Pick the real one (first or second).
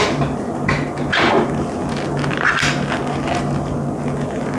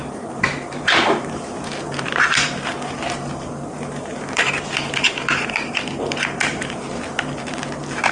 first